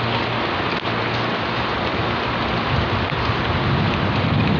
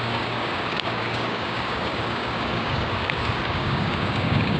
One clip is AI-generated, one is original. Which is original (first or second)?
first